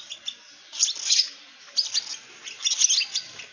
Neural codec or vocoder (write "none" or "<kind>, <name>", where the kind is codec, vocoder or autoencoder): none